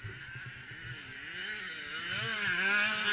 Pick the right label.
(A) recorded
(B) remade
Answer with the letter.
A